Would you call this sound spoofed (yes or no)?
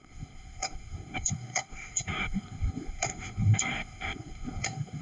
yes